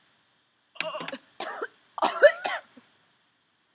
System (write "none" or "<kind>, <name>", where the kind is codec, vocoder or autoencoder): none